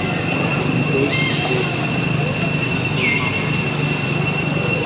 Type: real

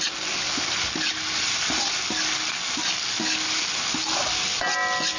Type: real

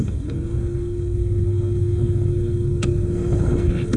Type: fake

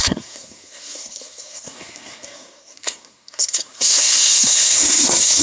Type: fake